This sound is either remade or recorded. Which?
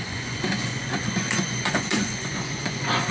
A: remade